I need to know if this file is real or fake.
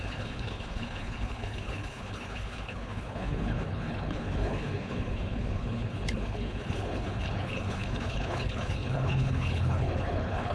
fake